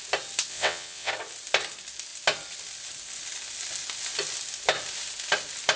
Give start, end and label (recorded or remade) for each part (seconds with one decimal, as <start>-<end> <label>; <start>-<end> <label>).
0.0-0.5 recorded; 0.5-1.1 remade; 1.1-5.8 recorded